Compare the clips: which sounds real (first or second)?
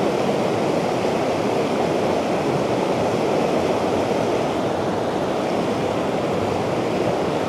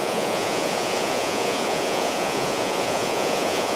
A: first